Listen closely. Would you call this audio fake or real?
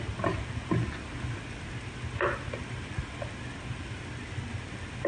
real